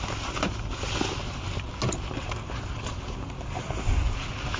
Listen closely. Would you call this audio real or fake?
real